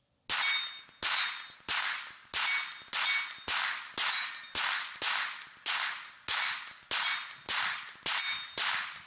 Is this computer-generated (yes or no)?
no